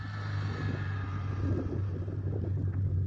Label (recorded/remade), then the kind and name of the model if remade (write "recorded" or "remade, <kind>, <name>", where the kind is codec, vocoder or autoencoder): recorded